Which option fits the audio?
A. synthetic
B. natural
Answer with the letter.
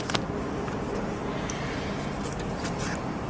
B